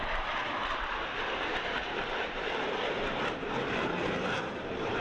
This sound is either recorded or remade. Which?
remade